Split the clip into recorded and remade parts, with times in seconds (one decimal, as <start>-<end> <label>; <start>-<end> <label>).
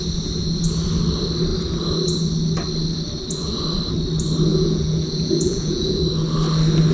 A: 0.0-4.5 recorded; 4.5-6.0 remade; 6.0-6.9 recorded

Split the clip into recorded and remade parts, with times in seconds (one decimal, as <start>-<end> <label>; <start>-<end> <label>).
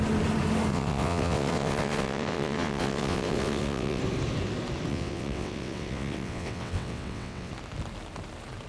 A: 0.0-0.7 recorded; 0.7-4.0 remade; 4.0-4.9 recorded; 4.9-7.5 remade; 7.5-8.7 recorded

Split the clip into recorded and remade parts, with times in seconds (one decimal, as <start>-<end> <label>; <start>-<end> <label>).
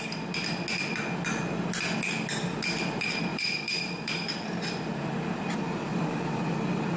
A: 0.0-3.3 recorded; 3.3-6.3 remade; 6.3-7.0 recorded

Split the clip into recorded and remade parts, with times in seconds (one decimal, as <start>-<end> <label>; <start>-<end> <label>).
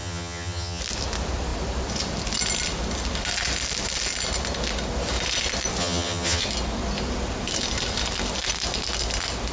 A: 0.0-0.8 remade; 0.8-5.8 recorded; 5.8-6.4 remade; 6.4-9.5 recorded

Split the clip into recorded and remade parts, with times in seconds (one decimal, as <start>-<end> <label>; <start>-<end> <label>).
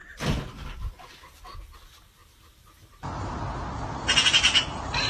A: 0.0-1.0 remade; 1.0-2.2 recorded; 2.2-3.4 remade; 3.4-5.1 recorded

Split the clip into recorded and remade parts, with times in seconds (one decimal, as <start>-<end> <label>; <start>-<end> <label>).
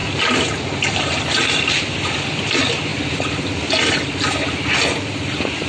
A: 0.0-2.9 remade; 2.9-5.0 recorded; 5.0-5.7 remade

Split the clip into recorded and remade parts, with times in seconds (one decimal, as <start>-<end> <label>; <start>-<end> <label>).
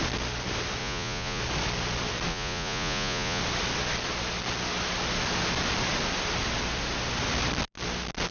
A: 0.0-0.8 recorded; 0.8-1.4 remade; 1.4-2.3 recorded; 2.3-3.4 remade; 3.4-8.3 recorded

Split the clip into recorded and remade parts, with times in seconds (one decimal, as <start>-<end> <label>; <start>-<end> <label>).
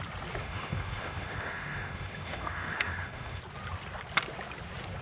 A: 0.0-0.4 recorded; 0.4-3.4 remade; 3.4-5.0 recorded